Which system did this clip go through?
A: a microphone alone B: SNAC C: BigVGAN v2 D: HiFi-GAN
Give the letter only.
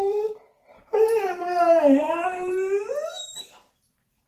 C